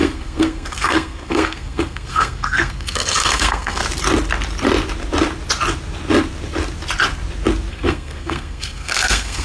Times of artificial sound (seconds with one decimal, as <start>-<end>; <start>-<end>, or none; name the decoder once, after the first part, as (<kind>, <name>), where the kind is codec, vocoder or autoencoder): 0.0-3.8 (codec, SNAC); 7.7-9.4